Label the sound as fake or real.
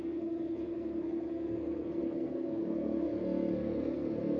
fake